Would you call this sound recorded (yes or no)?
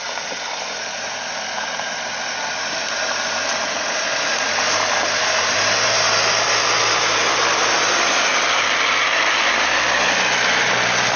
yes